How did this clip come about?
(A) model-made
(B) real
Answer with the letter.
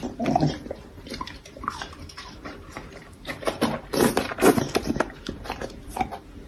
A